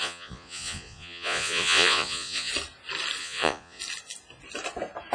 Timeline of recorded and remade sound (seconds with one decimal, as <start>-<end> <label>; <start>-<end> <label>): 0.0-2.5 remade; 2.5-3.2 recorded; 3.2-3.8 remade; 3.8-5.1 recorded